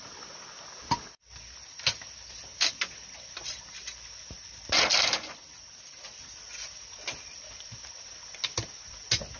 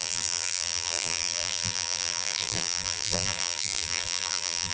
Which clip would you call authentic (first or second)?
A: first